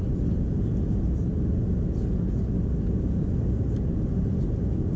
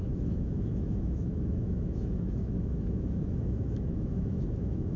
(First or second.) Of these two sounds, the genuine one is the first